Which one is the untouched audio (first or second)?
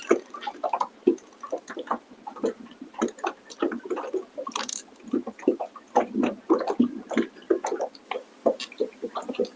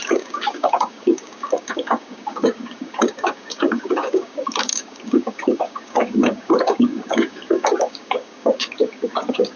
first